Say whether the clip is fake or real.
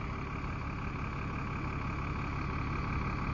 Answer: real